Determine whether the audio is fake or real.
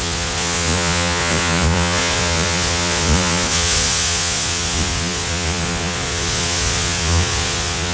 fake